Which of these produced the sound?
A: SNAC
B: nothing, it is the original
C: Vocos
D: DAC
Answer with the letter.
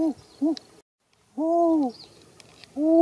B